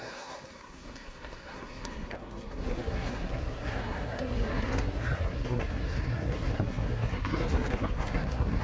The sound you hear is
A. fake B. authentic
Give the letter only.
A